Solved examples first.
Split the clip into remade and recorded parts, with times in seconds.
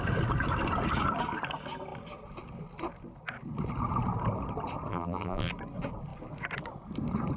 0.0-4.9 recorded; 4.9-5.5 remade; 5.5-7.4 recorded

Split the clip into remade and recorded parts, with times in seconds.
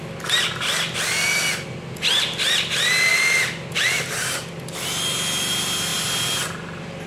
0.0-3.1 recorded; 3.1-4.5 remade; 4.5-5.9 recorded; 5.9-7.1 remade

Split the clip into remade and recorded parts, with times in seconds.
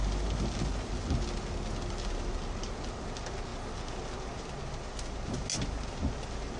0.0-6.6 recorded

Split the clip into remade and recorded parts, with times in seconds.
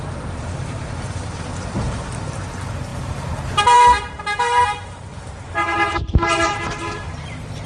0.0-7.7 remade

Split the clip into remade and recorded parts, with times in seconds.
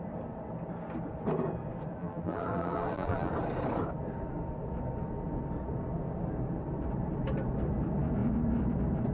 0.0-2.0 recorded; 2.0-3.3 remade; 3.3-9.1 recorded